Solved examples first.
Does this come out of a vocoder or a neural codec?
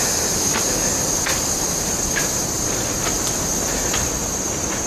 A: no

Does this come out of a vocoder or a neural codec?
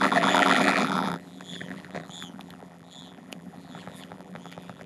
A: yes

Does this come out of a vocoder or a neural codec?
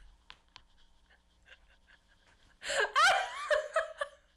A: no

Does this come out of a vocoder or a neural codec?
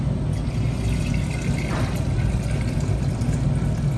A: no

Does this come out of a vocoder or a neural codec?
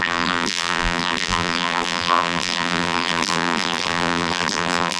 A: yes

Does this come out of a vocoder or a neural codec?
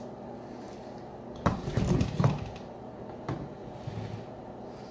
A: no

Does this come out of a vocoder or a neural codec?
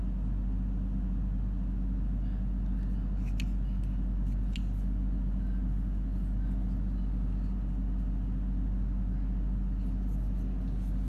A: no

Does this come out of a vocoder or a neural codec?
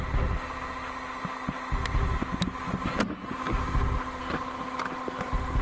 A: no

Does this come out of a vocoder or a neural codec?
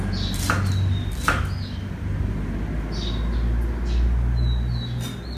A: no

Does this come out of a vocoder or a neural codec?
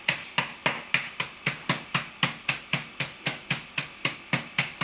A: no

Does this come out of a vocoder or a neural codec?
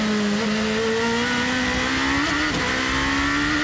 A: no